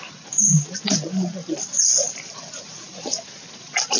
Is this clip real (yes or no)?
yes